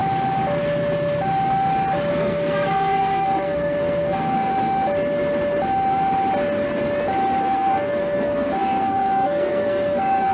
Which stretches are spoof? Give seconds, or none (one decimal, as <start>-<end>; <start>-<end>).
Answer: 2.1-4.5; 7.4-10.3